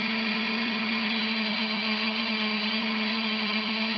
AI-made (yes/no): yes